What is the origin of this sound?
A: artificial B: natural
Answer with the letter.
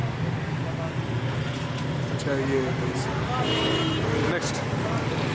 B